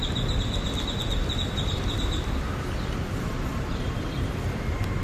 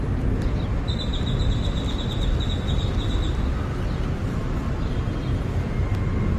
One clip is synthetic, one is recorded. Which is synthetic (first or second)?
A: first